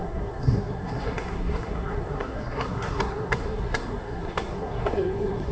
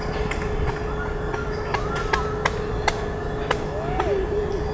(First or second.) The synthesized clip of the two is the first